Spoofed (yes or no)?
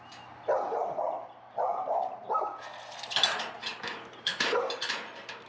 no